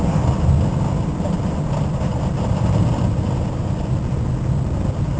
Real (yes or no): yes